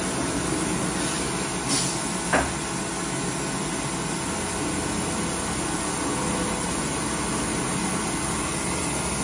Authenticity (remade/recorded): recorded